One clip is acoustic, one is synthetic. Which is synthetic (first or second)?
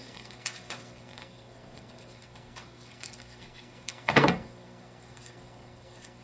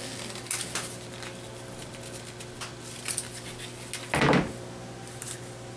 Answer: first